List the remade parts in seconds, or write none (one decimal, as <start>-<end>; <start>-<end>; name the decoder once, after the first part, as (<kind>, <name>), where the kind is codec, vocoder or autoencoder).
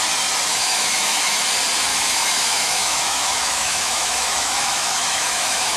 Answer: 0.5-1.5 (autoencoder, DAC-VAE); 1.9-5.8